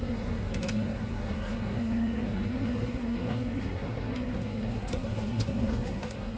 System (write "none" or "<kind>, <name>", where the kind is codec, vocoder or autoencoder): codec, SNAC